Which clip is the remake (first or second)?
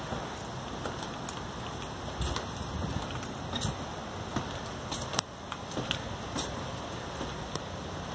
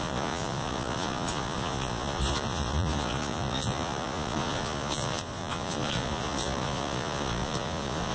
second